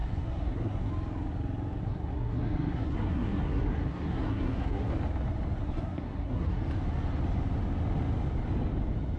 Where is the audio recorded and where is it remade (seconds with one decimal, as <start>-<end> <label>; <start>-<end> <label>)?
0.0-0.9 remade; 0.9-1.8 recorded; 1.8-4.9 remade; 4.9-5.6 recorded; 5.6-6.6 remade; 6.6-9.2 recorded